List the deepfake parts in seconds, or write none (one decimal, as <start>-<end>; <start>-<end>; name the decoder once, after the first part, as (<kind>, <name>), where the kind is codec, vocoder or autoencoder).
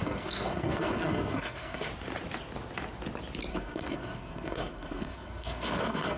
0.0-1.9 (codec, SNAC); 3.5-6.2